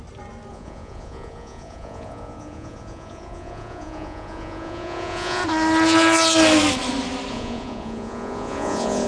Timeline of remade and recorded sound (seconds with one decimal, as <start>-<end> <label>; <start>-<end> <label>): 0.0-0.5 recorded; 0.5-5.4 remade; 5.4-7.3 recorded; 7.3-9.1 remade